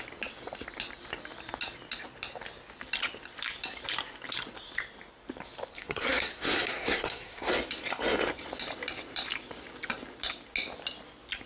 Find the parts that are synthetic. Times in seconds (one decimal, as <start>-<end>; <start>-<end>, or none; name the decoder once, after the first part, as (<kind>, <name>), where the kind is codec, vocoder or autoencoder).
5.7-7.5 (codec, SNAC)